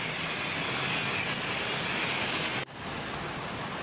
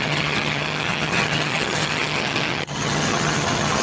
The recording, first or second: first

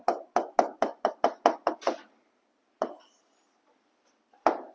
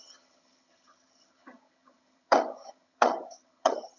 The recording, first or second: first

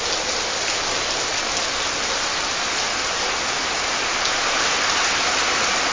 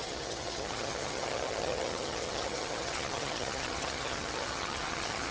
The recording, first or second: first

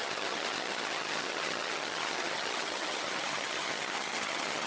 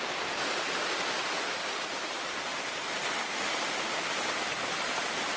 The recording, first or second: second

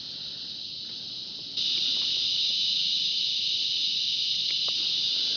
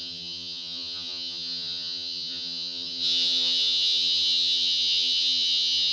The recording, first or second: first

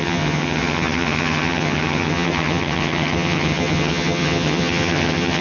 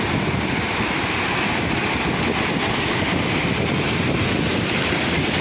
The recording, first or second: second